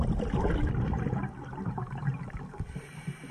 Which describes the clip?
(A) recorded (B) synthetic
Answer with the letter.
A